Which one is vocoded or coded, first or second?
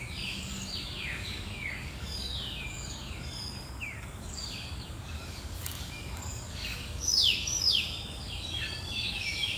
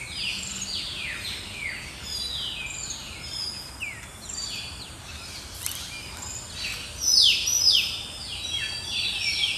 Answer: first